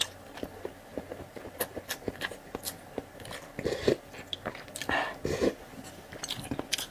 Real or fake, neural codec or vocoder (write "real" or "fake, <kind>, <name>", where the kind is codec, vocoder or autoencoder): real